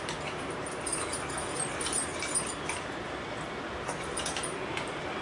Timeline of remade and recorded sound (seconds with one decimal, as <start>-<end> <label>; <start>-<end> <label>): 0.0-0.9 remade; 0.9-1.7 recorded; 1.7-2.1 remade; 2.1-5.2 recorded